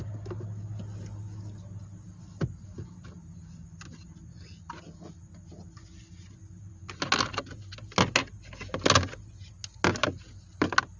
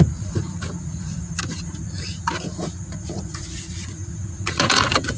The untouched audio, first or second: first